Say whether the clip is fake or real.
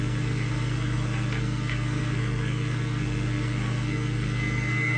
fake